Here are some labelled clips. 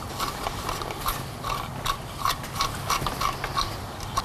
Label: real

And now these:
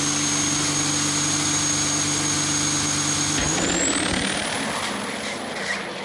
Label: real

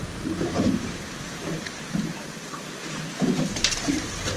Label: fake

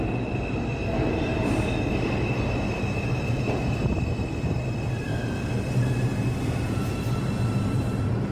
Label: real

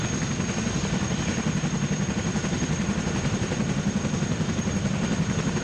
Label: fake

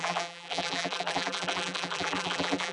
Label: fake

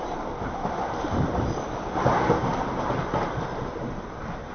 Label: fake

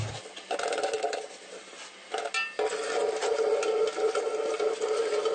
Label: real